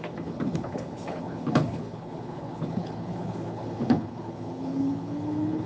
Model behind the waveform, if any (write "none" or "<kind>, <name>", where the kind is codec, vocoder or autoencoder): codec, HILCodec